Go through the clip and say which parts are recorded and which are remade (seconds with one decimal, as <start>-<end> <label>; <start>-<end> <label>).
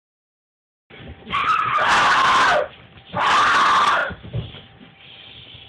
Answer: 0.0-5.7 recorded